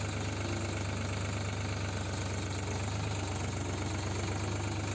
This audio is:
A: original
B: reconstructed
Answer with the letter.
A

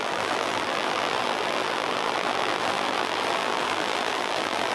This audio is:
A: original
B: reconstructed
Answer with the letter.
B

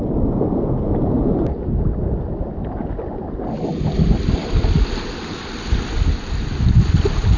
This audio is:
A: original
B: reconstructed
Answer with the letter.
A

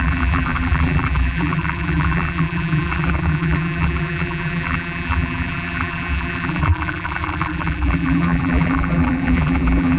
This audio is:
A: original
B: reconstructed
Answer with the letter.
B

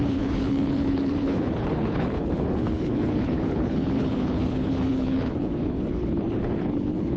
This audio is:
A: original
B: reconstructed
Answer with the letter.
B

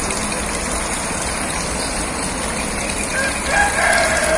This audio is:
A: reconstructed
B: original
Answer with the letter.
B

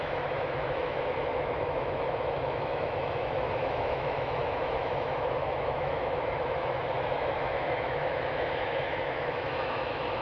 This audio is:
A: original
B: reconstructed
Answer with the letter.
B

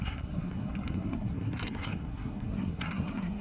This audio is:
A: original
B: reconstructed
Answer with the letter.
B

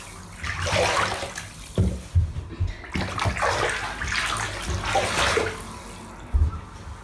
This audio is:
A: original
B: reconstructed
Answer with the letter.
A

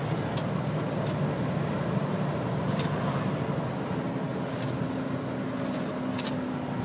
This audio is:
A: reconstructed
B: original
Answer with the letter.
B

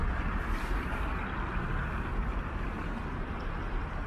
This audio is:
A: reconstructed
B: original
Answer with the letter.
B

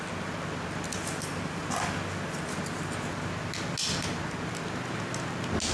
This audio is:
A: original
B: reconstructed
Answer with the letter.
A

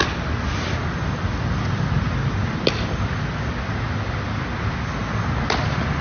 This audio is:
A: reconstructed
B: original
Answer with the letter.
B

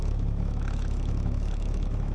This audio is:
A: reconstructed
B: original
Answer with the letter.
A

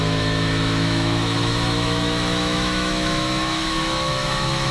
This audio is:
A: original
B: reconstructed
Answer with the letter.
B